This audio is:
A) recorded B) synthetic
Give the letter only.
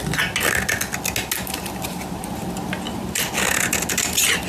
A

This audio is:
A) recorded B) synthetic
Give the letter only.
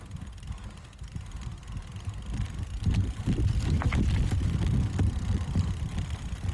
A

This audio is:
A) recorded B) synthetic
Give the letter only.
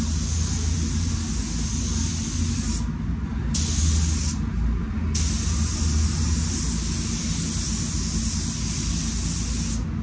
A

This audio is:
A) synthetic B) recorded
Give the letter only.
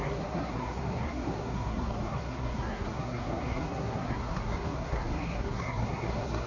A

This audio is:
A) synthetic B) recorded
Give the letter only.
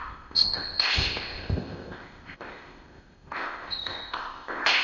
A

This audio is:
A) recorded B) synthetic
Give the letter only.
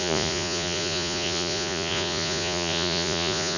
B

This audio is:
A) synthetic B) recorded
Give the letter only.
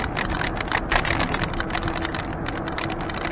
B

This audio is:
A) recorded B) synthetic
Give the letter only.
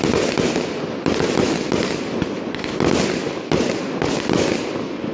A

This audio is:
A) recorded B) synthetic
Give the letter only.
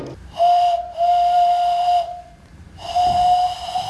A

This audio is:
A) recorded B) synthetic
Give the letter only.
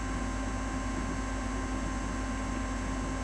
A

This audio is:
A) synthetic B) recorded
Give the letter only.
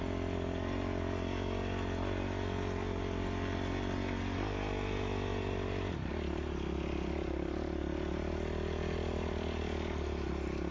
B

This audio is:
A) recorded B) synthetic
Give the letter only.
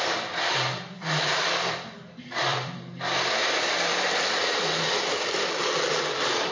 B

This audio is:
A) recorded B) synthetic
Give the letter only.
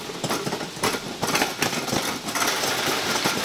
A